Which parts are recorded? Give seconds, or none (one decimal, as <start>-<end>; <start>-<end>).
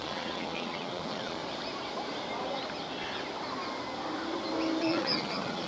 1.4-4.8